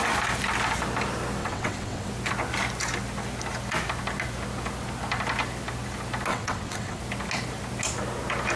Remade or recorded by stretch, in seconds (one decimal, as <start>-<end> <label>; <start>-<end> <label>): 0.0-1.4 recorded; 1.4-2.1 remade; 2.1-6.3 recorded; 6.3-7.0 remade; 7.0-8.6 recorded